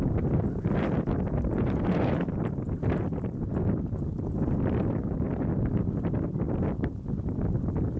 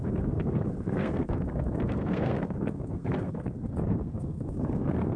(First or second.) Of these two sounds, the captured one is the first